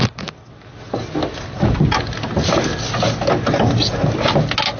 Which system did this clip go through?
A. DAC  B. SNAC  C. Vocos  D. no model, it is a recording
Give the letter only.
D